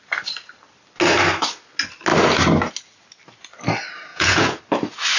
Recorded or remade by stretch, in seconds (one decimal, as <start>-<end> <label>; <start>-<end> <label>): 0.0-4.1 recorded; 4.1-4.6 remade; 4.6-5.2 recorded

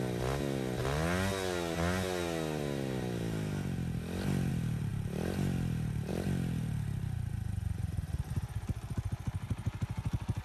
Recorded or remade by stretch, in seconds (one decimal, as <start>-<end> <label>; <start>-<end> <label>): 0.0-10.4 recorded